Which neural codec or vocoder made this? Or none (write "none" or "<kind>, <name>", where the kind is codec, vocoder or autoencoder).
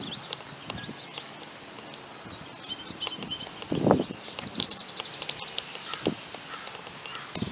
none